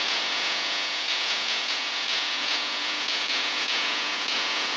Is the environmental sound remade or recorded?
remade